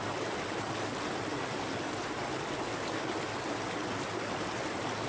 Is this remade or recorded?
recorded